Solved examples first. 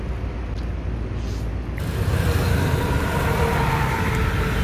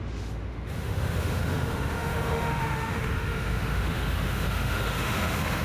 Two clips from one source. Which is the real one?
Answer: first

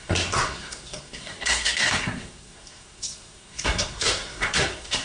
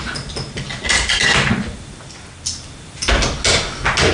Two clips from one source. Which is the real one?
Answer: second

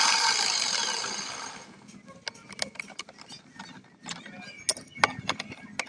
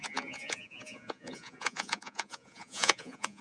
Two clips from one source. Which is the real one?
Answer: first